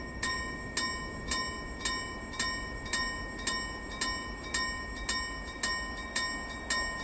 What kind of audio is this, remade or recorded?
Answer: recorded